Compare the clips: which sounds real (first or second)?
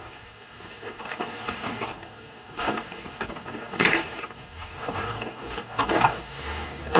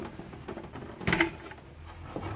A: second